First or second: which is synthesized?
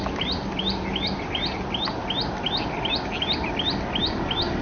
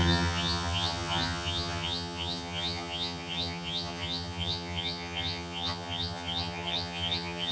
second